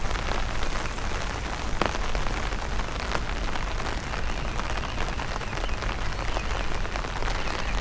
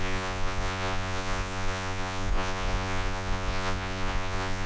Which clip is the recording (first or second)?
first